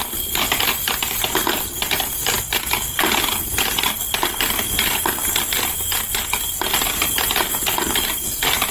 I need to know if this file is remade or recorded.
recorded